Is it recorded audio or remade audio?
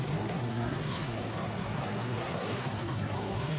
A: remade